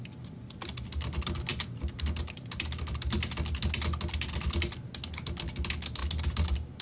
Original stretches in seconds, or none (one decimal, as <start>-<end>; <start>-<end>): 0.0-6.8